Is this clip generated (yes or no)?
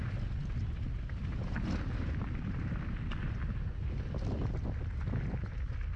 no